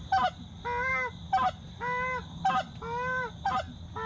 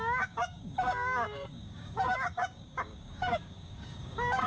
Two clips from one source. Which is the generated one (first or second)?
second